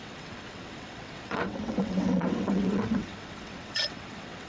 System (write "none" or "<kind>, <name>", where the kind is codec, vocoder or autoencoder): vocoder, WaveNeXt